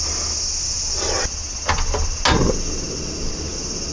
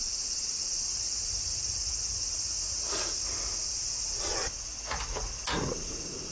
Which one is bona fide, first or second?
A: first